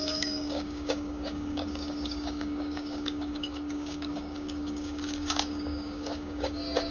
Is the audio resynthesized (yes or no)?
yes